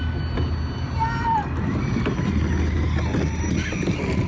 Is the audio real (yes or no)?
yes